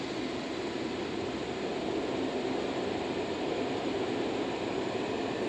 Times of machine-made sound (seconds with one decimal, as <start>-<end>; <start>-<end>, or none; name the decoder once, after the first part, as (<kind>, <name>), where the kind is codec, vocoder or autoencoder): none